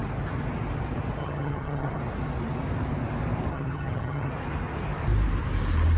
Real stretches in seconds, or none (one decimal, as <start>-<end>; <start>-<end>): 0.0-1.2; 2.0-3.5; 4.3-6.0